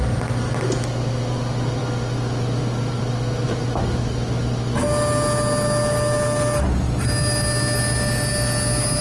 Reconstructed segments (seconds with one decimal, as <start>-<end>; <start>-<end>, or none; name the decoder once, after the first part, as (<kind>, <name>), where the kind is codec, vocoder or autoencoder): none